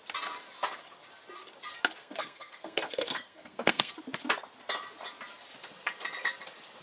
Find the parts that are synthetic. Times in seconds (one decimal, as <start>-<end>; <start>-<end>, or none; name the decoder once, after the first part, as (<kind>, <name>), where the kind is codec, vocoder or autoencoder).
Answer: 2.0-3.9 (codec, SNAC)